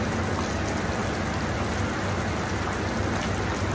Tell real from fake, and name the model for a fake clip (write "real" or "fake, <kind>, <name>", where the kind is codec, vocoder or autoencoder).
real